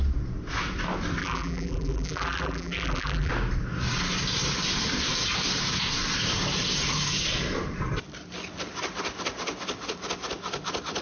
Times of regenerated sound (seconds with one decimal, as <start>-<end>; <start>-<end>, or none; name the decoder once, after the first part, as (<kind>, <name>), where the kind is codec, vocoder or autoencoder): 1.2-3.3 (vocoder, BigVGAN v2)